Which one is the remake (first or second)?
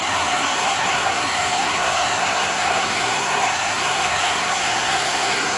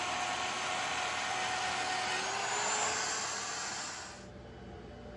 first